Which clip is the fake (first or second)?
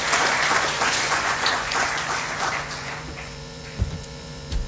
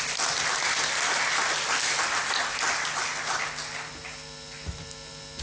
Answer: first